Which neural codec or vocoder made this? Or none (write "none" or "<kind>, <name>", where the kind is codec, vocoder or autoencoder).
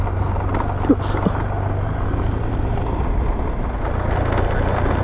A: none